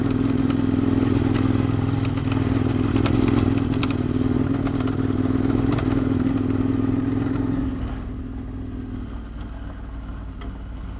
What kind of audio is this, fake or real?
real